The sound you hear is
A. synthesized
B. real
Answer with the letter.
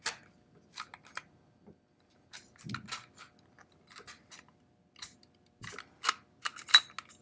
B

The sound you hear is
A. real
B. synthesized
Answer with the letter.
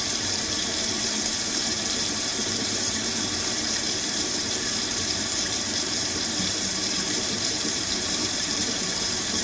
B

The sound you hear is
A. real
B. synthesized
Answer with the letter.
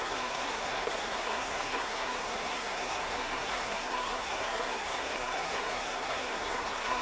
B